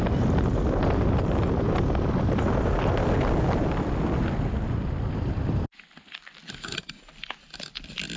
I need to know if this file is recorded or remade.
recorded